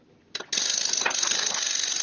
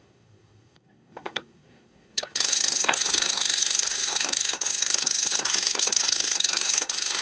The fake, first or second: second